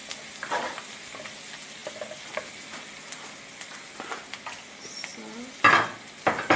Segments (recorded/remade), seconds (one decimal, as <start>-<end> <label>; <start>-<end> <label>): 0.0-6.6 recorded

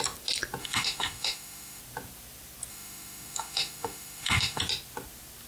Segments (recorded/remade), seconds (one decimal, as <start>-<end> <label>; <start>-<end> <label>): 0.0-0.6 recorded; 0.6-1.8 remade; 1.8-2.7 recorded; 2.7-4.6 remade; 4.6-5.5 recorded

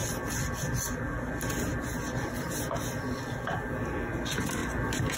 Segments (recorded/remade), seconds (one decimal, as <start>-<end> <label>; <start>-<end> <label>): 0.0-1.7 recorded; 1.7-3.2 remade; 3.2-5.2 recorded

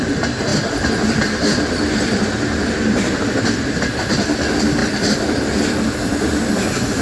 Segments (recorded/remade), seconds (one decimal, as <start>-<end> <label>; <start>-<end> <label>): 0.0-7.0 recorded